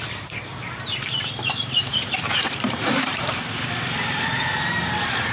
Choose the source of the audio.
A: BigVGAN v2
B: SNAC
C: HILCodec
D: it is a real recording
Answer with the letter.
A